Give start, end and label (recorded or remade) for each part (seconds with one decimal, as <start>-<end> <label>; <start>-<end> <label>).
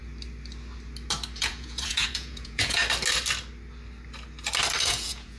0.0-1.4 recorded; 1.4-2.8 remade; 2.8-4.8 recorded; 4.8-5.4 remade